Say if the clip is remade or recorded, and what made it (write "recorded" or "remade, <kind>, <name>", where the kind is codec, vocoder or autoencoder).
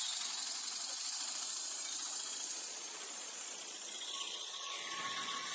remade, vocoder, Vocos